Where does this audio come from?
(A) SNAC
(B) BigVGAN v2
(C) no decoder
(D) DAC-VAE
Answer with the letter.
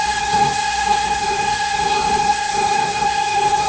A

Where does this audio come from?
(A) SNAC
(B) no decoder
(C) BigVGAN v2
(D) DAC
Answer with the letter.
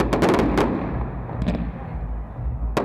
B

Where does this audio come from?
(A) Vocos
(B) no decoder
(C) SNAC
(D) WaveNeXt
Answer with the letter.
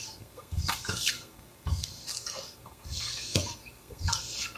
C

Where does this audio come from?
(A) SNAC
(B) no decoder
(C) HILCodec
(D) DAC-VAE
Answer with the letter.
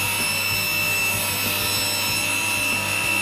B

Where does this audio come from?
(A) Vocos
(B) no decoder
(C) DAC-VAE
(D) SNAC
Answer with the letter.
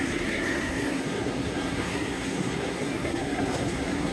D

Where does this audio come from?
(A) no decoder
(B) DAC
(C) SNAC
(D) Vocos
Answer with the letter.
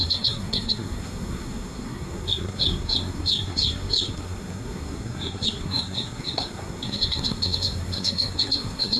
C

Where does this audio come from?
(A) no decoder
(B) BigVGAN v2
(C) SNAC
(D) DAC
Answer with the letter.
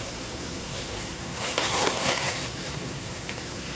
C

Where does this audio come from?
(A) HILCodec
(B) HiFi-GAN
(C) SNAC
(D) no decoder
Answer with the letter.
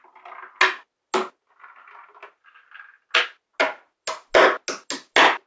D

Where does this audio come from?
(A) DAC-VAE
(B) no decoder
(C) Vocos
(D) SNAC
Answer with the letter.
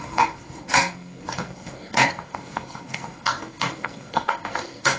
D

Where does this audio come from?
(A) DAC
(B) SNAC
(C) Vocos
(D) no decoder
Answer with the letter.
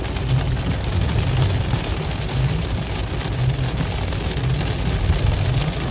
D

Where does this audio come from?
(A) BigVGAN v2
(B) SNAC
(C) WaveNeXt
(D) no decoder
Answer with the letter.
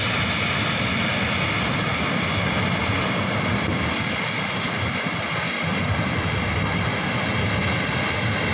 D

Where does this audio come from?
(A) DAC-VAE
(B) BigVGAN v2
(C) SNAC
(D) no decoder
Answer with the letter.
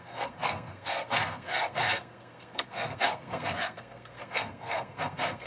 C